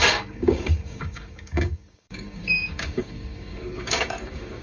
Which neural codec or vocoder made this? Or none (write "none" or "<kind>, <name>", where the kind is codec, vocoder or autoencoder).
codec, DAC